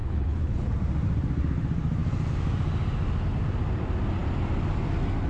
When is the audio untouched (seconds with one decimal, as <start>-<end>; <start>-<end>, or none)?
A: 0.7-5.3